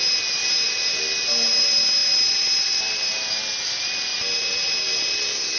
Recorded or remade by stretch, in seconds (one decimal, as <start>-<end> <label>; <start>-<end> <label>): 0.0-0.4 recorded; 0.4-1.0 remade; 1.0-2.0 recorded; 2.0-3.4 remade; 3.4-5.6 recorded